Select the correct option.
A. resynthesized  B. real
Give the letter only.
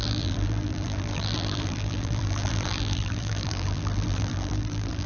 A